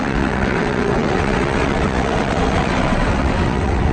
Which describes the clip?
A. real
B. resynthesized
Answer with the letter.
B